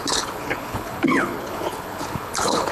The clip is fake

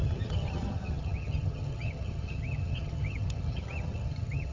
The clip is fake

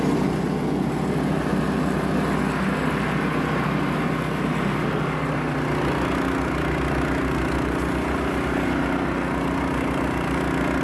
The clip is real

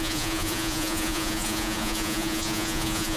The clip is fake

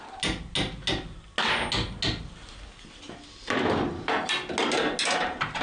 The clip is real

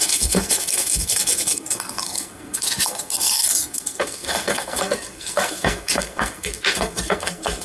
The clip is fake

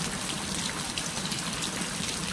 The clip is fake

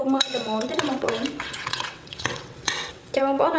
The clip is fake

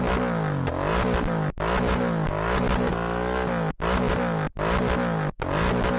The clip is real